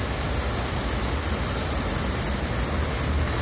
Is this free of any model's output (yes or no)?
yes